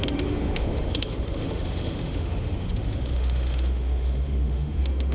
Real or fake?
fake